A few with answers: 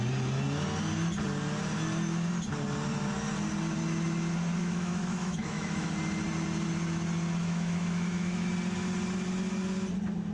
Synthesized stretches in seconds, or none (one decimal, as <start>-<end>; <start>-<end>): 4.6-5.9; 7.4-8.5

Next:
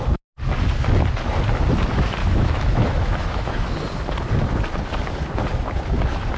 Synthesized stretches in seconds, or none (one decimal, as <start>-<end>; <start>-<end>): 2.2-3.7

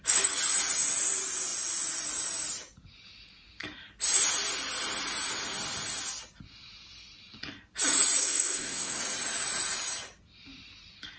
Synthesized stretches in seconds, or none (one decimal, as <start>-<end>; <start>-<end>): 8.2-9.0

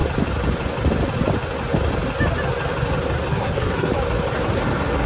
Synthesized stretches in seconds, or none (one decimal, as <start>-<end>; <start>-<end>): 3.3-3.9

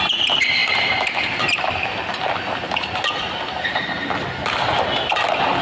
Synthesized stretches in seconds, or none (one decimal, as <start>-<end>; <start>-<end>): 0.0-5.6